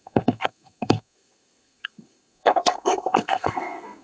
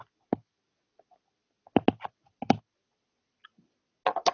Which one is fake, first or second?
first